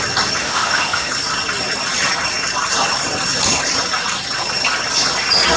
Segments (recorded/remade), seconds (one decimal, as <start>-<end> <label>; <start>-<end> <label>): 0.0-0.4 recorded; 0.4-1.1 remade; 1.1-5.6 recorded